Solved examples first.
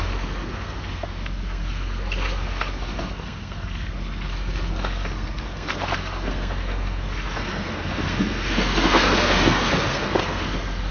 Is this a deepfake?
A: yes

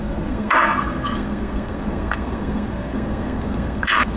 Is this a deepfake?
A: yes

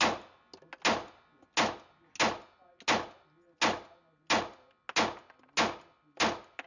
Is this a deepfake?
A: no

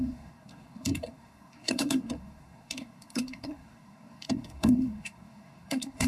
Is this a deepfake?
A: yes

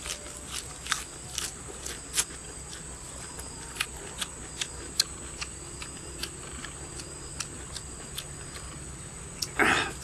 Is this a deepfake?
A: no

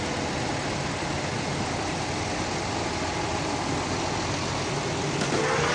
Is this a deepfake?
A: no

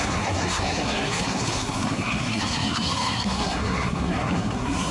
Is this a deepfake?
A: yes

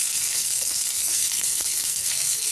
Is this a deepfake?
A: yes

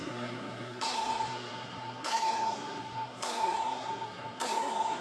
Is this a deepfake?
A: yes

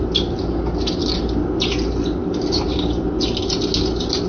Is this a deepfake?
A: no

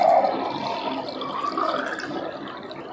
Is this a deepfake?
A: no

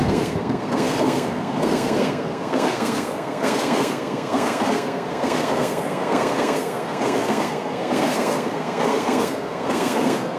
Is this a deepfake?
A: yes